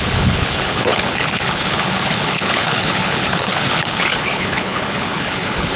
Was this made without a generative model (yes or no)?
no